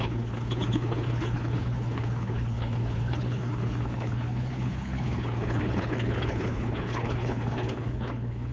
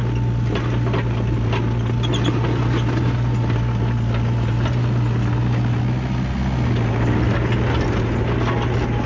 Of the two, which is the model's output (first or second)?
first